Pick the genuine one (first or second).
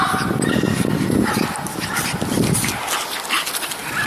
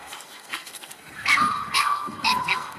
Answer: first